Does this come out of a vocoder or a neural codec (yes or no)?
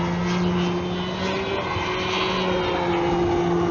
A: no